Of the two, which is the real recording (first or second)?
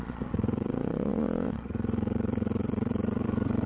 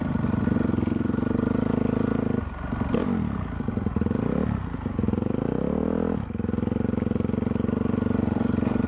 second